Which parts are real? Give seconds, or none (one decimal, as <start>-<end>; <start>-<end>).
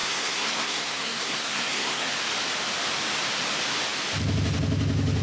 2.1-5.2